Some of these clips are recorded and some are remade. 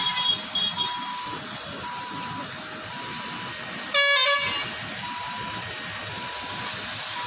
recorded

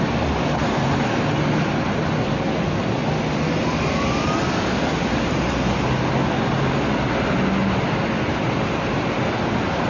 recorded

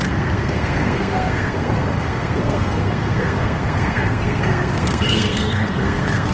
remade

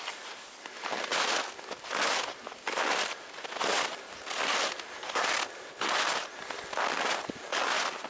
recorded